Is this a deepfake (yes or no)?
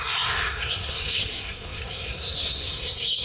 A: yes